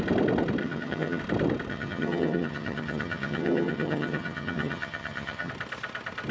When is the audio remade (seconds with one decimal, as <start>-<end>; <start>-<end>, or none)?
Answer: 0.6-1.2; 1.7-5.5